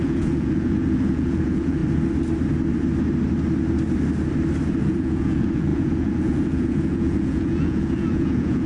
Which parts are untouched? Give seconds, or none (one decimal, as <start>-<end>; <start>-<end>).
1.8-4.8